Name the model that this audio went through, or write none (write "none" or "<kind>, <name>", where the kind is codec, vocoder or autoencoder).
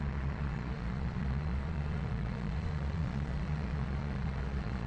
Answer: vocoder, Vocos